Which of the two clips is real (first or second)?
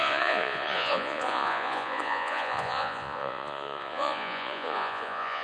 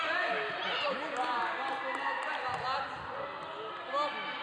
second